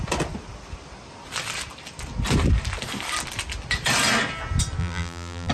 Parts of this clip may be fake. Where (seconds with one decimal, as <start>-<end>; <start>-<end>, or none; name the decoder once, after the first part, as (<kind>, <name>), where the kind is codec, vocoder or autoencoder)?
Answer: 4.8-5.5 (vocoder, BigVGAN v2)